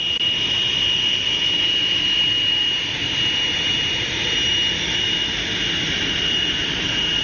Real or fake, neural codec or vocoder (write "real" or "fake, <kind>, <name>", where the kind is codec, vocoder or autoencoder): real